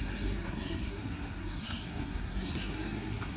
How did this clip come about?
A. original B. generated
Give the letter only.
B